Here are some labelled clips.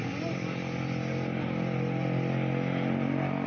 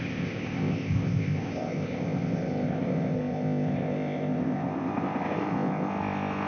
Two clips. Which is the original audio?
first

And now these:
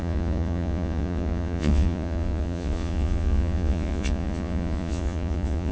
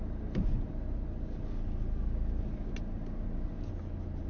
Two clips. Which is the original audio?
second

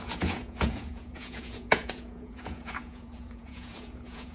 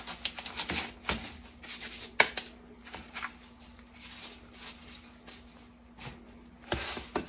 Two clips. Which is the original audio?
second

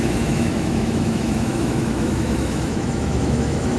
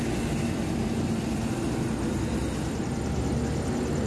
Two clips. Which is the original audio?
second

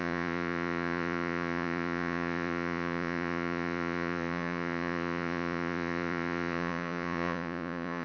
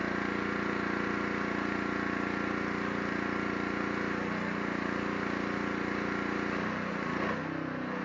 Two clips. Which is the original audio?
second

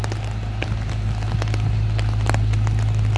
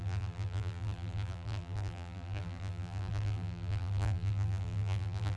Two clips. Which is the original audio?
first